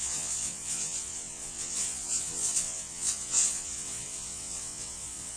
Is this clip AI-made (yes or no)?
yes